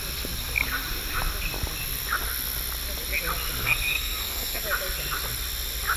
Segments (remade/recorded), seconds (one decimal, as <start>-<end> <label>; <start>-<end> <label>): 0.0-3.6 recorded; 3.6-4.6 remade; 4.6-6.0 recorded